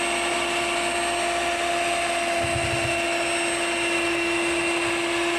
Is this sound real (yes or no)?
yes